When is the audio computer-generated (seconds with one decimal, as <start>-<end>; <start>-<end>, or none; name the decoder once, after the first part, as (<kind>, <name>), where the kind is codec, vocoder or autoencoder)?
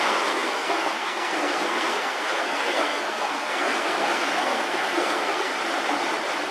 0.0-5.5 (codec, SNAC)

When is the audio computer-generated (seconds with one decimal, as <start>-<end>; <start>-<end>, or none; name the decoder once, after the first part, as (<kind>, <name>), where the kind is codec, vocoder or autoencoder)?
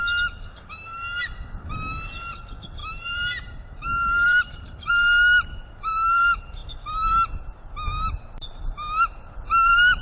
2.8-4.9 (vocoder, BigVGAN v2)